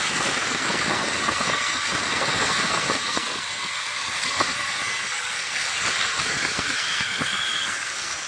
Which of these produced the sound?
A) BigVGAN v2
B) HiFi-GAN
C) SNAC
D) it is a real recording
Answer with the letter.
C